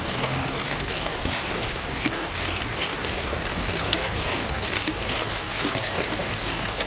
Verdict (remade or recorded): remade